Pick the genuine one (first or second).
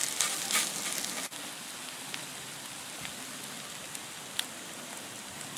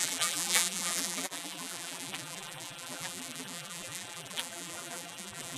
first